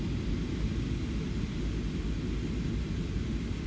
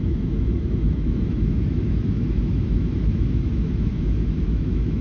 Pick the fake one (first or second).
second